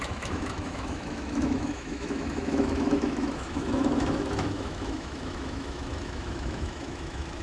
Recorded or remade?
remade